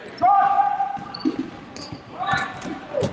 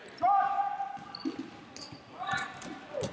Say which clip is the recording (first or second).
second